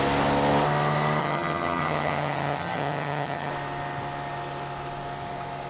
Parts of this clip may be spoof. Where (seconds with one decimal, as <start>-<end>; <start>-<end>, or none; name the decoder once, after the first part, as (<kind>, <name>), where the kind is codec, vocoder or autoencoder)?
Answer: 1.2-3.5 (vocoder, HiFi-GAN)